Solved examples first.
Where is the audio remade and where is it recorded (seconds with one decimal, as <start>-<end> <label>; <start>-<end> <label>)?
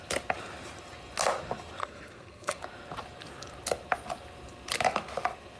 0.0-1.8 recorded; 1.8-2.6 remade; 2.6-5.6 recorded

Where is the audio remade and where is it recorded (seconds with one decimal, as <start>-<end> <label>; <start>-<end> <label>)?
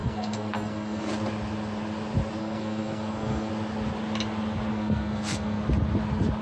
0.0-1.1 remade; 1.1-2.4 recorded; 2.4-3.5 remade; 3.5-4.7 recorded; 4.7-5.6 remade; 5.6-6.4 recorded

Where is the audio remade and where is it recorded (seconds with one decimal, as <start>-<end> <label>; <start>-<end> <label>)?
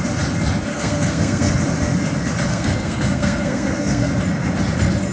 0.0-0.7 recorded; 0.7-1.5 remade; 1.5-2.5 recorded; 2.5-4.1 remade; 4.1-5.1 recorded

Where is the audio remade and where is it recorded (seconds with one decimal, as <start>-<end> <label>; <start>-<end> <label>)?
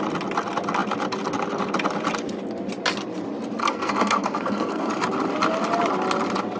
0.0-3.6 recorded; 3.6-4.9 remade; 4.9-6.6 recorded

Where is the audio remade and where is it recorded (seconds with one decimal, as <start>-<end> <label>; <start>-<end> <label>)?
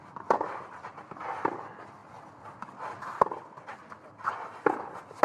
0.0-5.2 recorded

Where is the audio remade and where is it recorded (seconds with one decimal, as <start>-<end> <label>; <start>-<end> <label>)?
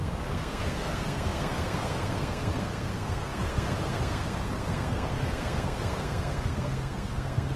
0.0-7.6 remade